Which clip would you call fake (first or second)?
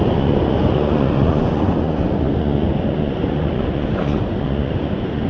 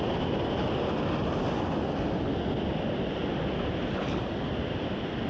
first